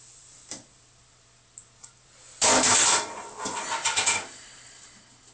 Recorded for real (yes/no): no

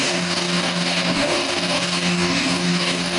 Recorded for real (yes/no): no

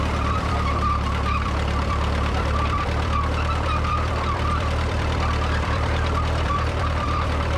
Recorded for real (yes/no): no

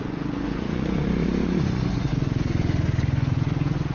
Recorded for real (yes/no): no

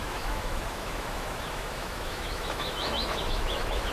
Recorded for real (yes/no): no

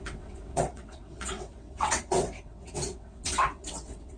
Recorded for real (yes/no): no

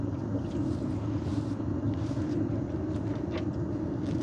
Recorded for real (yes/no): yes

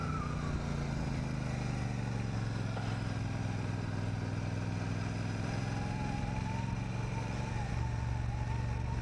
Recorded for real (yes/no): yes